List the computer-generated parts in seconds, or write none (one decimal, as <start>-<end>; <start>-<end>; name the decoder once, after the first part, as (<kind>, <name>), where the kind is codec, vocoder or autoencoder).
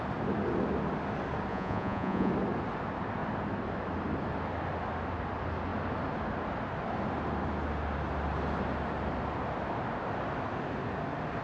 1.5-2.3 (vocoder, Vocos)